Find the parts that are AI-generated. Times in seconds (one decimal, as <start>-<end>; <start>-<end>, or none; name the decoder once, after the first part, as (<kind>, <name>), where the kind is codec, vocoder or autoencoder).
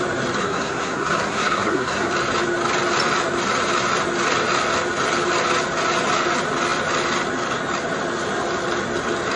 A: 0.4-2.1 (codec, SNAC)